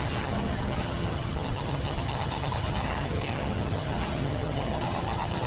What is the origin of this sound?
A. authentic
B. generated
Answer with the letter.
B